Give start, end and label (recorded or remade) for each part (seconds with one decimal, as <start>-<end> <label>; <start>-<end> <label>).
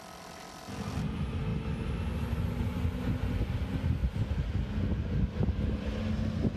0.0-6.6 recorded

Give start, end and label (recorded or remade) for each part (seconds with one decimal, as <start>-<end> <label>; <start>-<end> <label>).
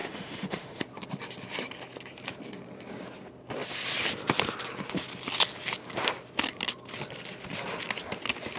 0.0-0.8 remade; 0.8-8.6 recorded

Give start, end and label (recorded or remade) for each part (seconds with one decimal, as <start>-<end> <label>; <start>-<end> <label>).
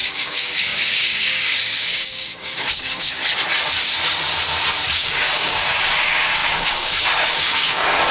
0.0-3.2 remade; 3.2-4.9 recorded; 4.9-8.1 remade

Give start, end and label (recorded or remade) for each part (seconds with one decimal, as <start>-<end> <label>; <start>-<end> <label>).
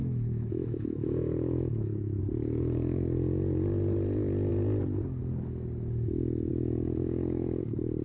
0.0-2.2 remade; 2.2-6.5 recorded; 6.5-7.6 remade; 7.6-8.0 recorded